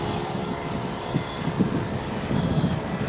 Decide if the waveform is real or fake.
fake